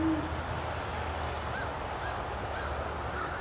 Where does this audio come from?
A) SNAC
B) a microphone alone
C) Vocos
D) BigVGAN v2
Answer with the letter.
B